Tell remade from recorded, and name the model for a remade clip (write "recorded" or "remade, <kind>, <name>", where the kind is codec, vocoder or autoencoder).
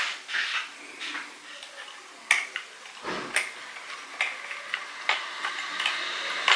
recorded